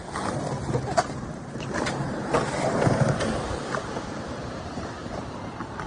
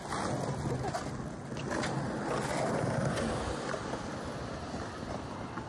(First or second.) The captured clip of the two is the second